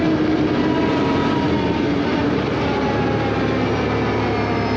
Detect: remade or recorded recorded